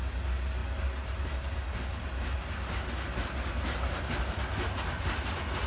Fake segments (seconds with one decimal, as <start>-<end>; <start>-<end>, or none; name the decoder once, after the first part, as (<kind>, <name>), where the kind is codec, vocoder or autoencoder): none